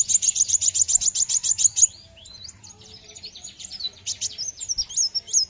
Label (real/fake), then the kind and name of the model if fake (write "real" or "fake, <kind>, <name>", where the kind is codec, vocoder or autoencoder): real